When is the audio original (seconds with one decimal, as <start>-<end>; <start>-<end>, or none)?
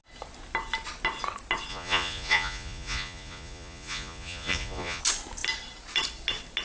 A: 0.0-1.7; 5.0-6.6